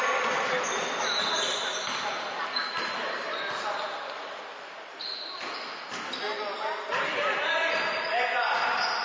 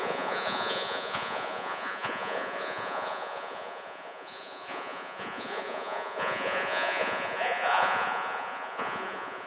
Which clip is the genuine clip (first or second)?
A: first